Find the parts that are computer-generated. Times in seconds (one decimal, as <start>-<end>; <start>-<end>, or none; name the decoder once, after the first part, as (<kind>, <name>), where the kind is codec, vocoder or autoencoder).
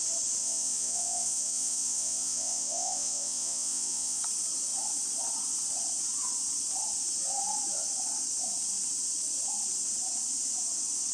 0.4-4.2 (vocoder, Vocos)